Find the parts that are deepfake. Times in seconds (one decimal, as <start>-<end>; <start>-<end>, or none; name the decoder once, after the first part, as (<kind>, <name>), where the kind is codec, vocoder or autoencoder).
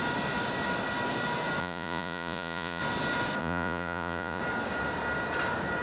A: 1.6-2.8 (vocoder, Vocos); 3.4-4.4